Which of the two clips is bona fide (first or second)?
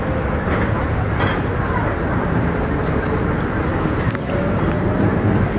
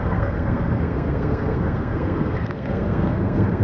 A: first